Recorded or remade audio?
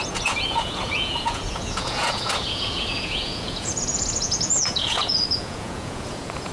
remade